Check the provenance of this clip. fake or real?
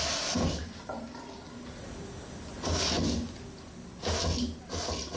real